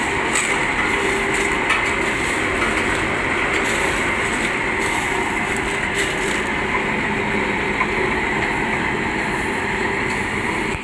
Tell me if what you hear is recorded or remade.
recorded